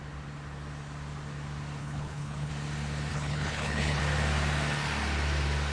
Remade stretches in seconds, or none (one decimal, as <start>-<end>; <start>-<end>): 1.8-2.5; 3.1-4.0

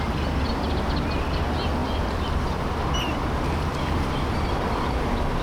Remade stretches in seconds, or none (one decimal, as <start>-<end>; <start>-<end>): 1.8-5.0

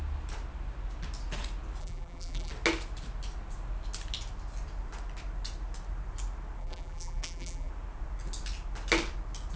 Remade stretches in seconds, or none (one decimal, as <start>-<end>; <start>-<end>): 1.8-2.5; 6.6-7.7

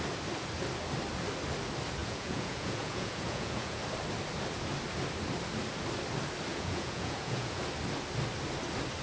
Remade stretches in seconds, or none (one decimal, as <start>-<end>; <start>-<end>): 2.0-3.8; 6.5-7.6

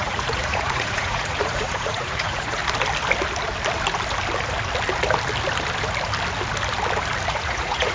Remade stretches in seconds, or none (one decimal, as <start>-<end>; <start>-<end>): 0.0-2.6; 7.3-7.9

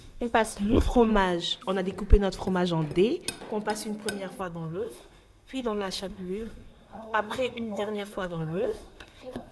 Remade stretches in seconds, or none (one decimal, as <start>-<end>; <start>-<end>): 0.0-1.1; 4.4-9.5